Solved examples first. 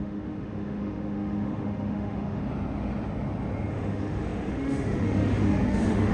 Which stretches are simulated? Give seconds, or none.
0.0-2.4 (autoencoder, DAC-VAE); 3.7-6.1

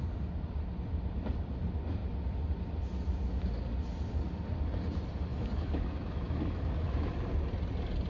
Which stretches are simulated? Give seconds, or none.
5.3-7.1 (autoencoder, DAC-VAE)

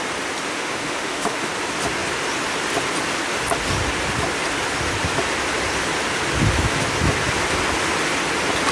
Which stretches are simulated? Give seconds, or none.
0.5-1.5 (autoencoder, DAC-VAE)

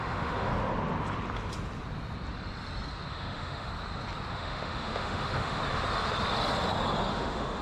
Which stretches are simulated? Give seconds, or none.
0.0-0.5 (autoencoder, DAC-VAE); 3.1-3.7; 4.3-5.6; 7.1-7.6

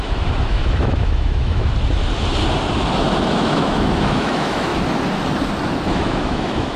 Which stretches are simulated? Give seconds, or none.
0.0-1.6 (autoencoder, DAC-VAE); 3.0-4.7; 5.9-6.8

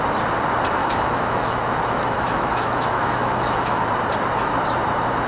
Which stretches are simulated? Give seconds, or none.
0.8-3.9 (autoencoder, DAC-VAE)